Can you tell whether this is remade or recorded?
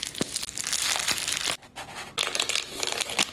recorded